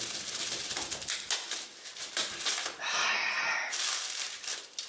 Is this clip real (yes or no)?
yes